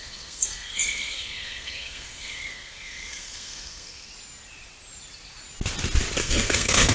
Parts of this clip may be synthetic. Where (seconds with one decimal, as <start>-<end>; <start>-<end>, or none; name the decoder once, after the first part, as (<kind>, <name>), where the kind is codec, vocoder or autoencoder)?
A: 0.0-4.1 (codec, SNAC); 6.2-6.9

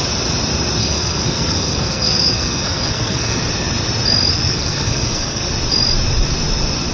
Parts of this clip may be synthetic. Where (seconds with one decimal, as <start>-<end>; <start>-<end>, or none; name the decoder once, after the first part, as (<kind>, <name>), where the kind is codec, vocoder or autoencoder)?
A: 0.8-3.4 (codec, SNAC); 4.3-5.4

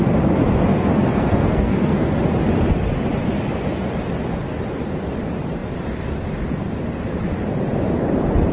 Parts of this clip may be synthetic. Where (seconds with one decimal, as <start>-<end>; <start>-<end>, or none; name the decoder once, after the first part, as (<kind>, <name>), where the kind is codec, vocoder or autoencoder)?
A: 0.7-2.1 (codec, SNAC)

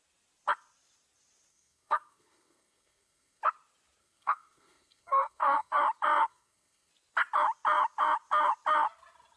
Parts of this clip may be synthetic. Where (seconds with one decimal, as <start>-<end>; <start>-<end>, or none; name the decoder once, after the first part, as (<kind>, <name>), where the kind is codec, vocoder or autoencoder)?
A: 1.5-3.4 (codec, SNAC); 4.0-5.8; 6.2-6.9